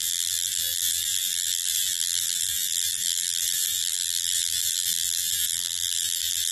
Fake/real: fake